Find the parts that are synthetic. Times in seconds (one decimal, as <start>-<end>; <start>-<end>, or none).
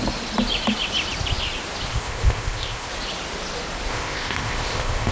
1.9-2.9; 3.9-5.1